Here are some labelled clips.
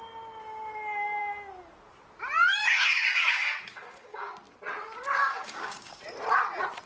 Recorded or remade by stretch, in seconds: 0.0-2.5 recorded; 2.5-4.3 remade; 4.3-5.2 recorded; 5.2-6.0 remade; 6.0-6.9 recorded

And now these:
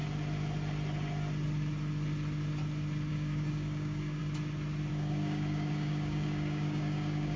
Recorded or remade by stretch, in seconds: 0.0-3.1 recorded; 3.1-4.2 remade; 4.2-4.9 recorded; 4.9-7.4 remade

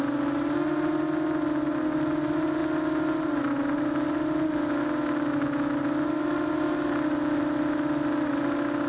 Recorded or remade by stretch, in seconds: 0.0-8.9 recorded

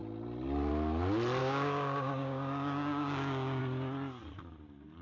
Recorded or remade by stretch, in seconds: 0.0-1.4 recorded; 1.4-3.6 remade; 3.6-5.0 recorded